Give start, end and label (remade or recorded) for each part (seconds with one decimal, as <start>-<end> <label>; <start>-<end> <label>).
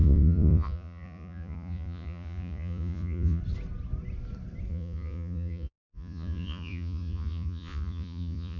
0.0-3.4 remade; 3.4-4.7 recorded; 4.7-8.6 remade